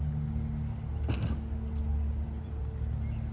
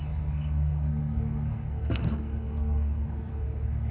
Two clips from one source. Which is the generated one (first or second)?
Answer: second